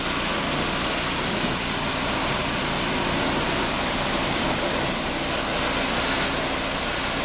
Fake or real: real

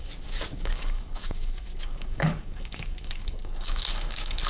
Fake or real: fake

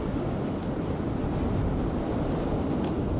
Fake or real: real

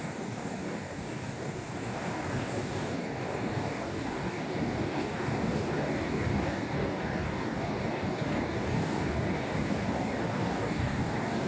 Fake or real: fake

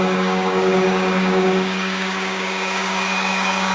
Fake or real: fake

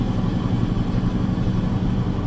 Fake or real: real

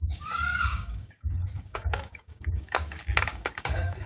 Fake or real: fake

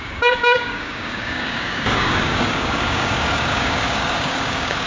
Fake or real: fake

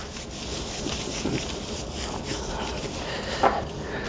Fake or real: real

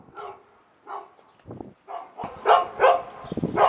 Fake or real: real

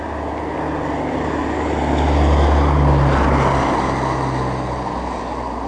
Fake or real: real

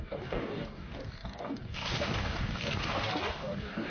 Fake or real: fake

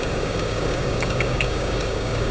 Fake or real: fake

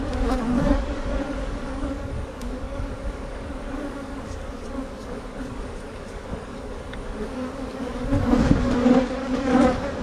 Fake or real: fake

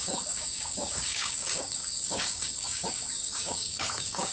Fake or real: fake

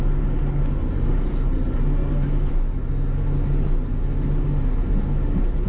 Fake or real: real